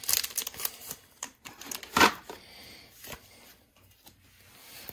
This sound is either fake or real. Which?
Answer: real